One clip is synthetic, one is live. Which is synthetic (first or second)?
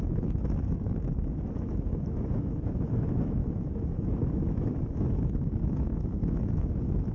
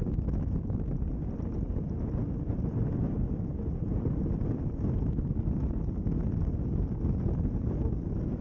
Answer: first